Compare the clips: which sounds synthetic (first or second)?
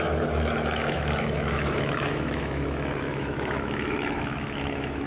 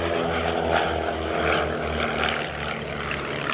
first